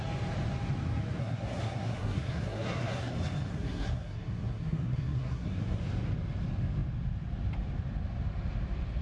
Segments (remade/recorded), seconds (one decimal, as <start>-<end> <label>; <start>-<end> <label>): 0.0-1.2 recorded; 1.2-3.1 remade; 3.1-3.5 recorded; 3.5-5.8 remade; 5.8-9.0 recorded